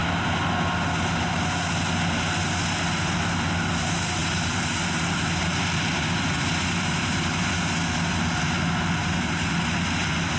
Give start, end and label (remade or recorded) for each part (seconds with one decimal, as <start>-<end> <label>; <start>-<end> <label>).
0.0-4.2 recorded; 4.2-7.5 remade; 7.5-9.0 recorded; 9.0-9.6 remade; 9.6-10.4 recorded